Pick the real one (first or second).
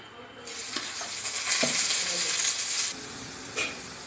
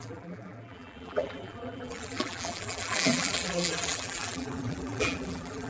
first